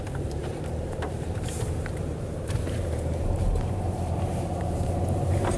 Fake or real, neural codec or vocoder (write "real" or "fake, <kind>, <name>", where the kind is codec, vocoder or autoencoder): fake, vocoder, BigVGAN v2